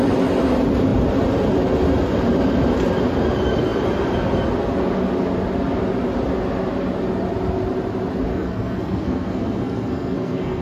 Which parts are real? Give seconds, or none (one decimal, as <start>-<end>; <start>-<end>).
0.0-8.3